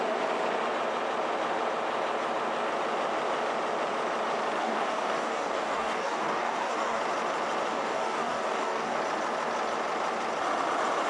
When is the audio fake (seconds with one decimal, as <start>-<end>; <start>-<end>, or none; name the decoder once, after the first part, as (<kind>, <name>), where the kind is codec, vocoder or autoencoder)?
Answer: 4.6-7.0 (codec, DAC); 7.7-9.0